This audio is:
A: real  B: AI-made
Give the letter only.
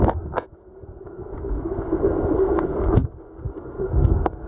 B